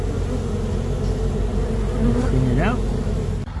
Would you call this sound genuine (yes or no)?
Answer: yes